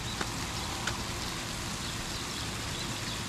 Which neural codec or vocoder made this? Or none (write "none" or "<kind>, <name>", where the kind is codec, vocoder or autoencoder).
none